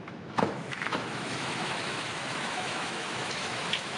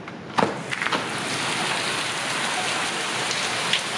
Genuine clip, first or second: second